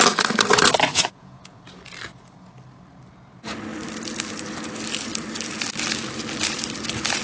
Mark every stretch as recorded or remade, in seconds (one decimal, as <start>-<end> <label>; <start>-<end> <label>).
0.0-0.9 recorded; 0.9-1.6 remade; 1.6-7.2 recorded